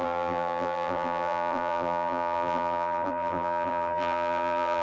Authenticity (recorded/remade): remade